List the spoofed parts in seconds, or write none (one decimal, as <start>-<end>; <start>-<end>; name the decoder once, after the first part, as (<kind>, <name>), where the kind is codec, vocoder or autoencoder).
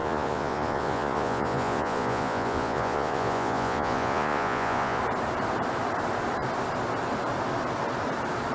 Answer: 0.0-5.0 (vocoder, Vocos)